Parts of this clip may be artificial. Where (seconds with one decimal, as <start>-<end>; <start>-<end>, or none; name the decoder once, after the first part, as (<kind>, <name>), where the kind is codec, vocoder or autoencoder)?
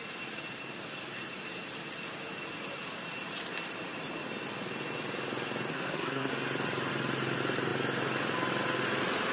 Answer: 5.7-6.3 (codec, SNAC)